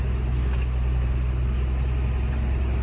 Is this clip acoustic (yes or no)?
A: yes